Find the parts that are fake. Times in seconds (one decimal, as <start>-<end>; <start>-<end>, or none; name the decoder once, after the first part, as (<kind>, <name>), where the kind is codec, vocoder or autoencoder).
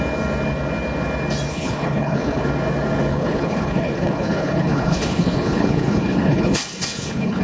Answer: 1.5-2.4 (codec, HILCodec); 3.1-7.4